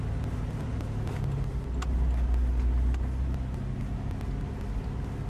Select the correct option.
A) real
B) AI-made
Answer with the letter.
A